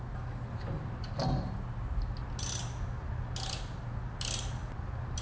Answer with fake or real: real